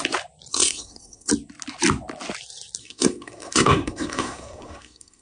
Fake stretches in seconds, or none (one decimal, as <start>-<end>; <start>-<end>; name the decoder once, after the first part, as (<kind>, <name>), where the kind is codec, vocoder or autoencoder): 0.5-1.3 (codec, SNAC); 2.8-5.2